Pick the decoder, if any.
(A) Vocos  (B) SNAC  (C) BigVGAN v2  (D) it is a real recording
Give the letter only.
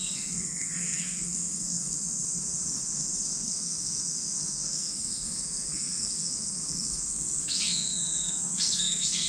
B